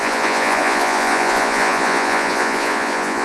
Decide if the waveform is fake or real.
fake